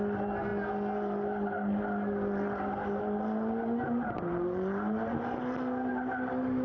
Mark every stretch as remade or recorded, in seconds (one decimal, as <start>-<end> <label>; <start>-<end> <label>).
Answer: 0.0-6.6 recorded